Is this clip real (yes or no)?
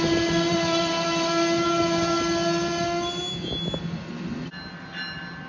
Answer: yes